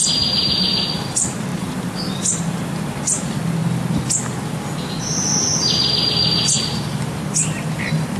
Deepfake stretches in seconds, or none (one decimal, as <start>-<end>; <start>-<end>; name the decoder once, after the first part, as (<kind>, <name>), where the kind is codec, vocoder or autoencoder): none